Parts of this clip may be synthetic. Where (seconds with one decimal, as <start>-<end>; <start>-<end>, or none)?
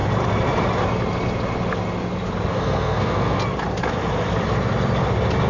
2.5-3.4